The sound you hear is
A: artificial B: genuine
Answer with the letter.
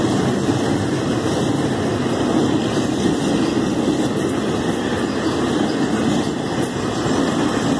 B